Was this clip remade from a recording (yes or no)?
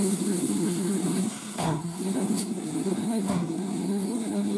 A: yes